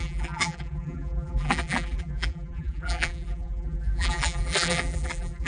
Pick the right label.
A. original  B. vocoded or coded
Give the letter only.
B